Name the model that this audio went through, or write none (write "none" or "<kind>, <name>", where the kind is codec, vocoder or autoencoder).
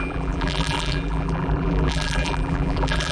vocoder, BigVGAN v2